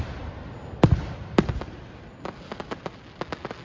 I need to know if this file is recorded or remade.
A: recorded